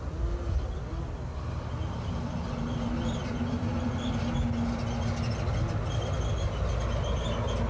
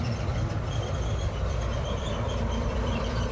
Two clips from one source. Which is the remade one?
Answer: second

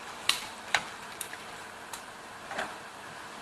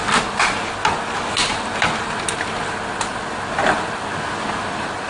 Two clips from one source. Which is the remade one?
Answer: first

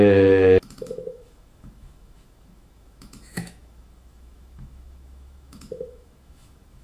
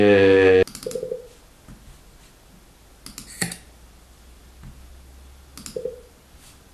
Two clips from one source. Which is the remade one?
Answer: first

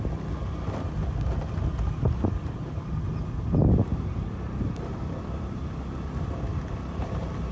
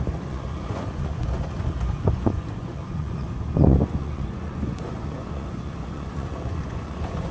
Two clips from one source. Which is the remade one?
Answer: second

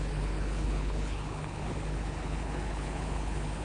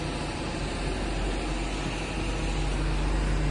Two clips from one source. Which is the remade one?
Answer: first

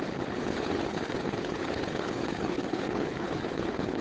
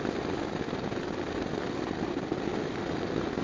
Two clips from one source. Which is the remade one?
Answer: first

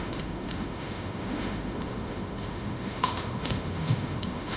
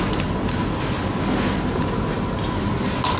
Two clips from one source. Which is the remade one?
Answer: first